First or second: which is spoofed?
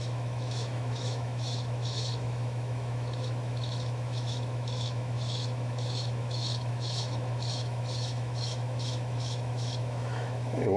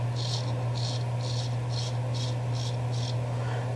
first